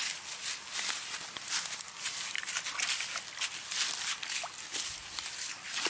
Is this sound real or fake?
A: real